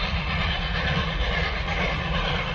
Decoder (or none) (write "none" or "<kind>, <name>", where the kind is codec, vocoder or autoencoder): vocoder, Vocos